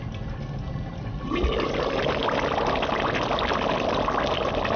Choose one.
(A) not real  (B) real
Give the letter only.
B